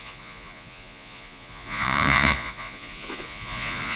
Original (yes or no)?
no